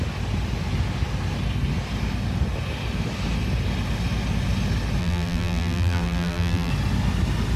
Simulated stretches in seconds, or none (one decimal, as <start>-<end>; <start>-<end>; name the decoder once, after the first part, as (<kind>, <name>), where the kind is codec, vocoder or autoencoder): 5.0-6.7 (vocoder, BigVGAN v2)